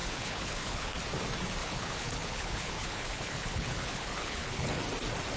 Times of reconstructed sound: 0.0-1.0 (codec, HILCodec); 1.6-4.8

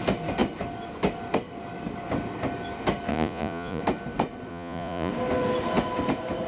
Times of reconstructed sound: 3.1-3.8 (vocoder, Vocos); 4.5-5.1